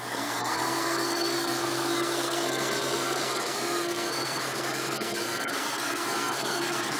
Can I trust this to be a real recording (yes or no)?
no